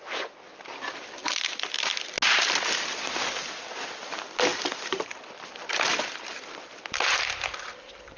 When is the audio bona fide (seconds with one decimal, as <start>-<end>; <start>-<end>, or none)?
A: 0.0-8.2